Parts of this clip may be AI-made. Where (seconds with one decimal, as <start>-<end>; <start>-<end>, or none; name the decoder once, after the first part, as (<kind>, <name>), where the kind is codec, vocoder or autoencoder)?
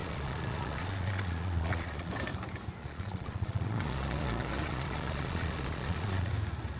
0.0-2.1 (vocoder, Vocos); 2.8-6.3